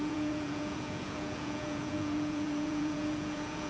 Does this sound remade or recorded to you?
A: remade